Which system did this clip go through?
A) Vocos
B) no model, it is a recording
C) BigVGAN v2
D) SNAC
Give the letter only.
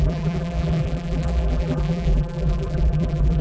C